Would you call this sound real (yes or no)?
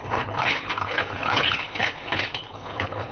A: no